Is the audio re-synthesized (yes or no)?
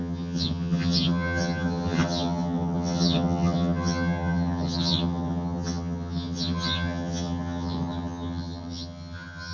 yes